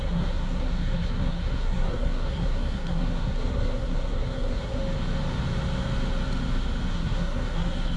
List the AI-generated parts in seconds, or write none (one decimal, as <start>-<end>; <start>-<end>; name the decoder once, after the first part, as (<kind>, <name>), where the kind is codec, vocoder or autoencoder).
0.0-4.8 (codec, SNAC); 6.9-8.0